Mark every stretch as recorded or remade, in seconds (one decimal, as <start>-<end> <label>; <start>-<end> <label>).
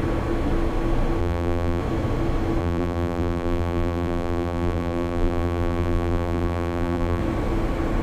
0.0-1.2 recorded; 1.2-1.8 remade; 1.8-2.6 recorded; 2.6-7.2 remade; 7.2-8.0 recorded